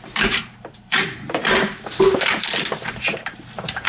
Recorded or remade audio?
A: remade